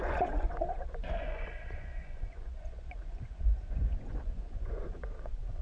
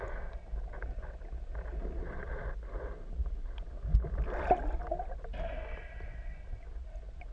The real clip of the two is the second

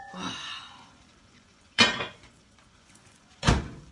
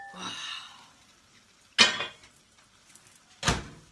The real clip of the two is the second